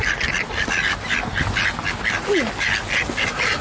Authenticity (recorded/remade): recorded